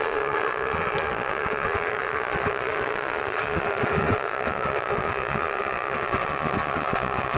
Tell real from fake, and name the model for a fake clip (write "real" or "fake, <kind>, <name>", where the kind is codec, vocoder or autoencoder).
fake, vocoder, Vocos